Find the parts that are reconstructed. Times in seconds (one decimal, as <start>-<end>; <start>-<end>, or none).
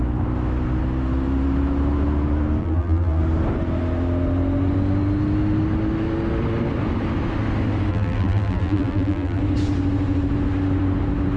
2.6-3.2; 7.9-9.4